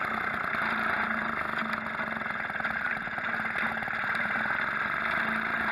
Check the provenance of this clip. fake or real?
real